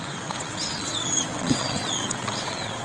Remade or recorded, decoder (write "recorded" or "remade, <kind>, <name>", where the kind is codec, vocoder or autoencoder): remade, vocoder, WaveNeXt